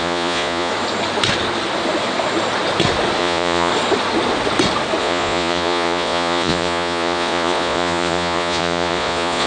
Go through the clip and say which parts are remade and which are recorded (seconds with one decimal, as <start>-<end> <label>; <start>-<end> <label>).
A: 0.0-0.7 remade; 0.7-3.2 recorded; 3.2-3.7 remade; 3.7-5.0 recorded; 5.0-9.5 remade